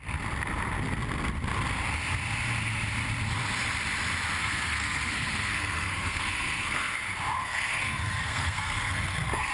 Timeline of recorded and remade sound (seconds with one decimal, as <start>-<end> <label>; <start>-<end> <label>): 0.0-4.4 recorded; 4.4-6.9 remade; 6.9-7.4 recorded; 7.4-9.5 remade